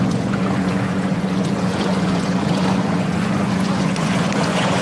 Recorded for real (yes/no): no